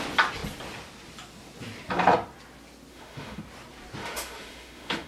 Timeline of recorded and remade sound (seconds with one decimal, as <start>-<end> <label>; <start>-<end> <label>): 0.0-2.9 recorded; 2.9-3.4 remade; 3.4-4.0 recorded; 4.0-5.1 remade